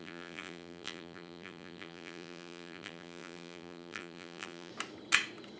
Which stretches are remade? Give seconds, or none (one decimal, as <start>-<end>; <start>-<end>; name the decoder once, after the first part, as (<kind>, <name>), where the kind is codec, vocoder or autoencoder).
0.0-4.7 (vocoder, BigVGAN v2)